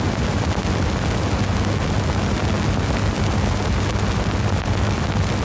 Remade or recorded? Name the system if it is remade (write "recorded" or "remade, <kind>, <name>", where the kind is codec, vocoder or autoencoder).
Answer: recorded